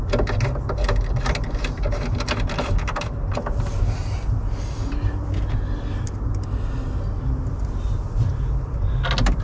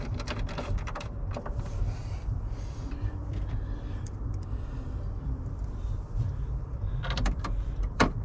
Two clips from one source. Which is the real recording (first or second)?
first